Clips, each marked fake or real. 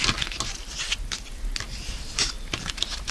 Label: real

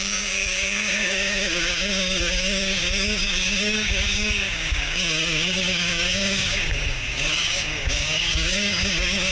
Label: fake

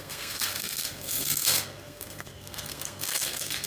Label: fake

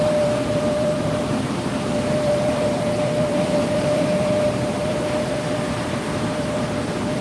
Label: fake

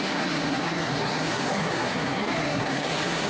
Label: fake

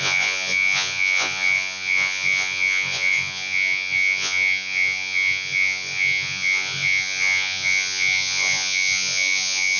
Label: fake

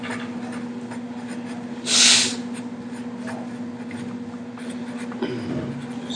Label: real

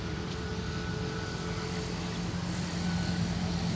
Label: real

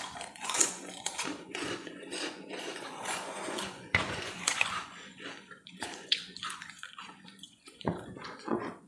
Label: fake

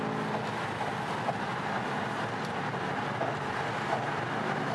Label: real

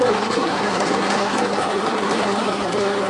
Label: fake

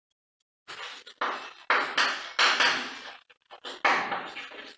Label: real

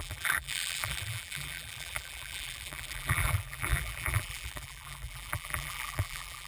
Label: fake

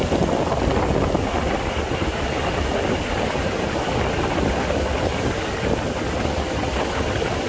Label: real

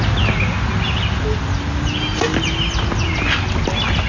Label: real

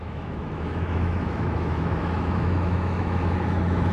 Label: fake